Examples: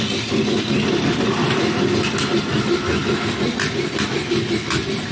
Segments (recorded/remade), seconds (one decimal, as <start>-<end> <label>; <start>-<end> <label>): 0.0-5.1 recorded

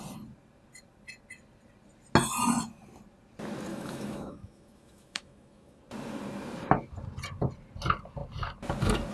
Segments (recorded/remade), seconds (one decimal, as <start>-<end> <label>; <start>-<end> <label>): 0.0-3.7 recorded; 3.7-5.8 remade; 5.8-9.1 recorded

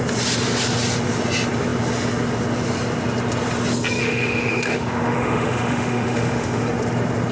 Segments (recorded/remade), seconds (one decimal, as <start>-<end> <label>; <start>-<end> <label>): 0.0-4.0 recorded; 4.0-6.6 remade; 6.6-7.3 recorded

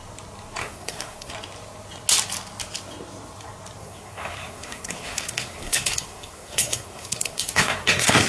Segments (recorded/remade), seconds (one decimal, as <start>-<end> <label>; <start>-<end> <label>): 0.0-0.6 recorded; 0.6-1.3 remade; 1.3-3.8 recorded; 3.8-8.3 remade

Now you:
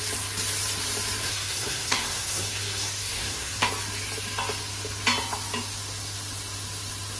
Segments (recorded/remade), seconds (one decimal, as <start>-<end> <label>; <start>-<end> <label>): 0.0-1.2 recorded; 1.2-3.7 remade; 3.7-7.2 recorded